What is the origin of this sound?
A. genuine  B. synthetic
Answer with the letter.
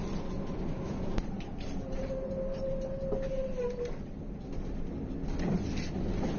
A